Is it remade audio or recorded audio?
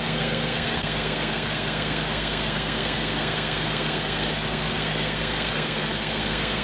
remade